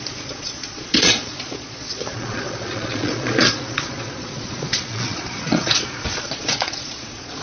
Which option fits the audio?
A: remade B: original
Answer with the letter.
A